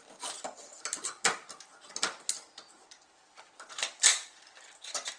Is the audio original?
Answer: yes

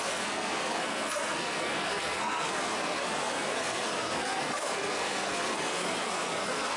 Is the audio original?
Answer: no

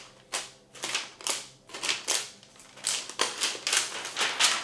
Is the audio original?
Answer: yes